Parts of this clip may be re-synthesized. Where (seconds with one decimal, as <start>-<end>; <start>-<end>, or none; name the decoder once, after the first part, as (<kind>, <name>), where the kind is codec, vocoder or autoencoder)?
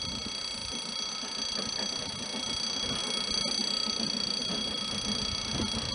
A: none